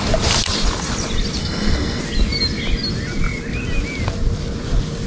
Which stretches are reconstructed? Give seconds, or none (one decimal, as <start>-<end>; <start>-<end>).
1.4-2.0